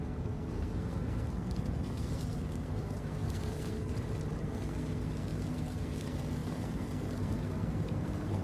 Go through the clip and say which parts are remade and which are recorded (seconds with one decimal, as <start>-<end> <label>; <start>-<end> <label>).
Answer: 0.0-3.9 remade; 3.9-4.4 recorded; 4.4-8.4 remade